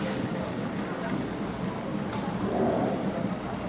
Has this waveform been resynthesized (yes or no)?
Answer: no